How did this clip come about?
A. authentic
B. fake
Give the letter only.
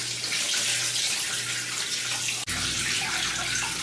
A